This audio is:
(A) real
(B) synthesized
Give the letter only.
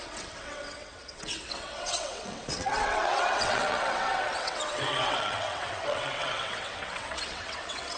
B